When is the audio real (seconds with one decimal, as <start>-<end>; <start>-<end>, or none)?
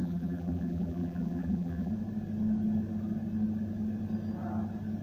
1.9-5.0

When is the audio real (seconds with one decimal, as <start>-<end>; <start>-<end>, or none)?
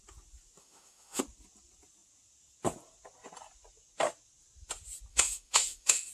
0.0-0.6; 1.2-5.1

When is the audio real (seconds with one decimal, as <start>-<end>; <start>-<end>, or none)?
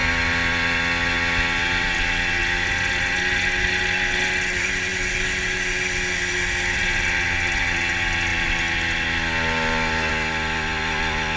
0.0-11.4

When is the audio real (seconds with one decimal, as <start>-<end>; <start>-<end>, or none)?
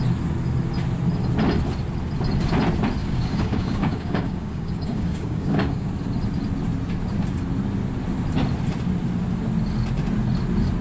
0.0-3.0; 5.9-10.8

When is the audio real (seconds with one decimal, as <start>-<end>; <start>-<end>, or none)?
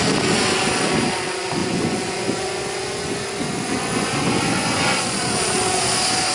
0.0-1.6; 5.4-6.3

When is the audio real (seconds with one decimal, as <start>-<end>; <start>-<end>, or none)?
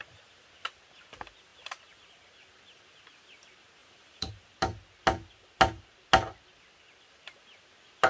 0.0-1.5; 2.3-3.8; 4.3-8.1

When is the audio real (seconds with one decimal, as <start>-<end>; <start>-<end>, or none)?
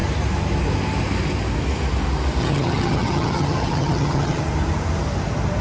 0.0-2.4; 4.4-5.6